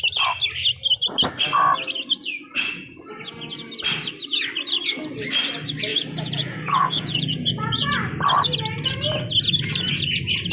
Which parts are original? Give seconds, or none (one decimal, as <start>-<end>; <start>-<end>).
0.0-2.2; 3.0-5.9; 7.9-10.5